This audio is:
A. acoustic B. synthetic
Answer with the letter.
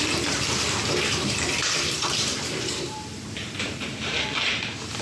B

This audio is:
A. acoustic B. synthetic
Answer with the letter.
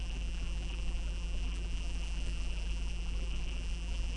B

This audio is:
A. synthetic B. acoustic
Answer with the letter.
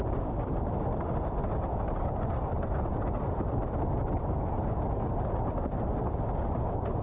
B